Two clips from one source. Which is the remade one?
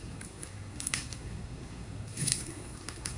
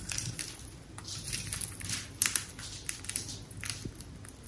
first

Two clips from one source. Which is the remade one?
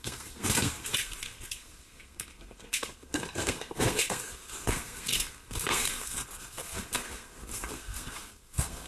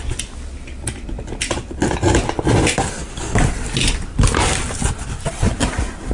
first